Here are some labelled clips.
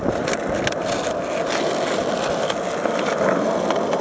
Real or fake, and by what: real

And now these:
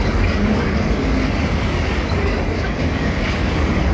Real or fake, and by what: fake, codec, DAC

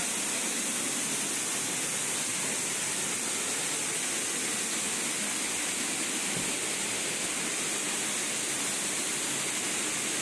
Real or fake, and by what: real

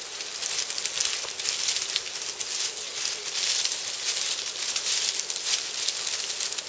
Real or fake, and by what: real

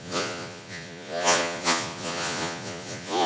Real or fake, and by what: fake, vocoder, Vocos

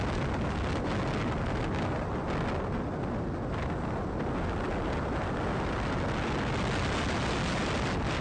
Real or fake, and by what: real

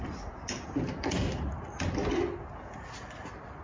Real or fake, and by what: real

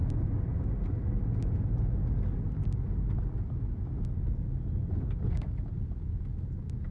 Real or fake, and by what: real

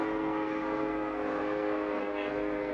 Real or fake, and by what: fake, codec, SNAC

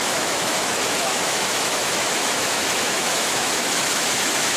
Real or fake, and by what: fake, autoencoder, DAC-VAE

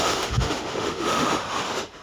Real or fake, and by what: fake, autoencoder, DAC-VAE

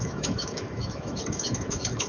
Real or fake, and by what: fake, autoencoder, DAC-VAE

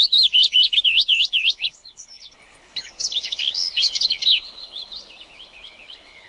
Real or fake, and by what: fake, codec, HILCodec